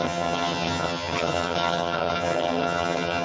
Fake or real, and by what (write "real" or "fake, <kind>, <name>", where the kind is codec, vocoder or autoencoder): fake, vocoder, HiFi-GAN